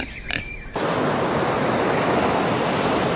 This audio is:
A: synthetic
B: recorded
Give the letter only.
B